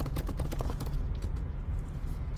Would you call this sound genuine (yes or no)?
no